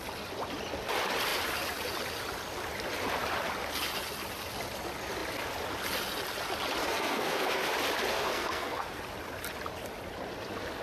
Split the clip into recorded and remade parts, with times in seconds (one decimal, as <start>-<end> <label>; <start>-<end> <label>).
0.0-6.8 recorded; 6.8-7.7 remade; 7.7-8.1 recorded; 8.1-9.0 remade; 9.0-10.8 recorded